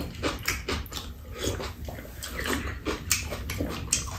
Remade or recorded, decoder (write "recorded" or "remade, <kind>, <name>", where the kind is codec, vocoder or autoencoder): recorded